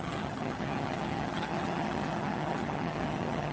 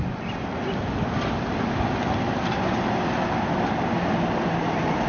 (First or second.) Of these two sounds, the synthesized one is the first